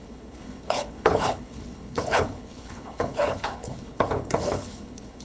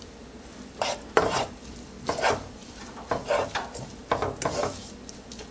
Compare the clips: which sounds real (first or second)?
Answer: second